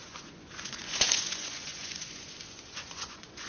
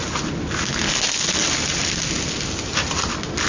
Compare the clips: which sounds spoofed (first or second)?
first